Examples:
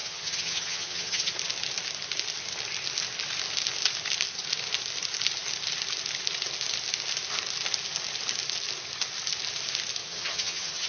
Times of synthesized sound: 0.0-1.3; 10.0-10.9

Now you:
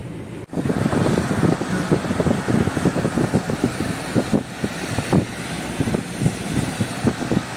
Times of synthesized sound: none

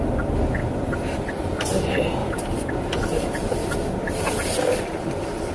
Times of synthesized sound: 0.6-1.5; 3.6-4.2

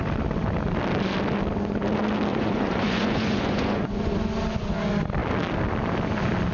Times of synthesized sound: 2.3-4.1